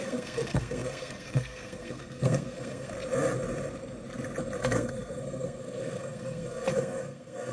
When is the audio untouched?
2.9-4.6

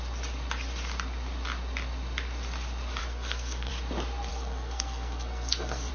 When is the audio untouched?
0.0-3.0; 3.7-4.3

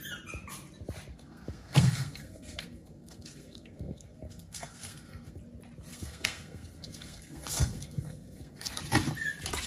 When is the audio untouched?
0.0-1.1; 5.4-5.9; 8.8-9.7

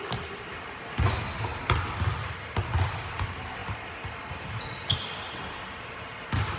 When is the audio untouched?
0.0-6.6